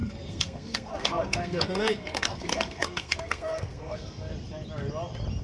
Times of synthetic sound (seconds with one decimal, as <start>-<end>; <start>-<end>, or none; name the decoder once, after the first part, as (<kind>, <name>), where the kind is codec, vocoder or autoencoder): 0.0-4.3 (codec, SNAC)